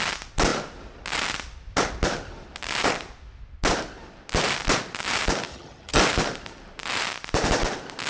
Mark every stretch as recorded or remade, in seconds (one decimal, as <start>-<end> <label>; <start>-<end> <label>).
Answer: 0.0-5.5 recorded; 5.5-6.0 remade; 6.0-8.1 recorded